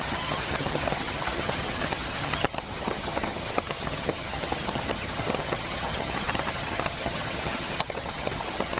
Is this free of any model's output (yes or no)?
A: no